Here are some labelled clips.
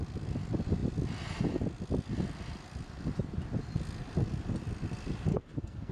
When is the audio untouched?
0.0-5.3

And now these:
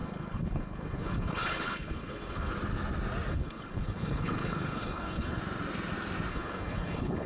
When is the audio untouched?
2.5-3.3; 5.4-6.3

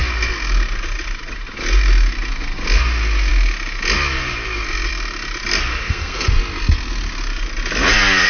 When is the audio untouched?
0.0-5.7; 6.3-8.3

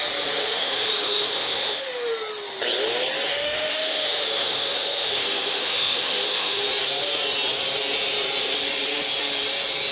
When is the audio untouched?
0.0-0.4; 2.1-3.3; 6.6-9.9

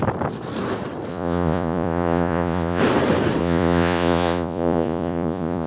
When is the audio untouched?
0.0-1.1; 2.8-3.4

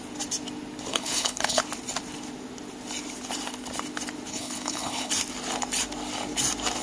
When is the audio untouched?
0.0-0.9; 1.6-4.3; 5.1-6.8

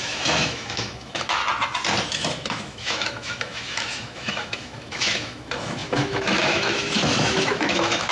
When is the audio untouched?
1.4-2.1